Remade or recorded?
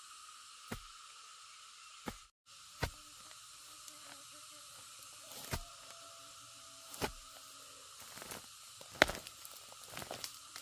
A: recorded